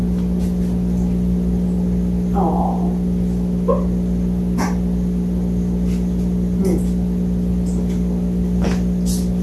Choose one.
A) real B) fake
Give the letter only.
A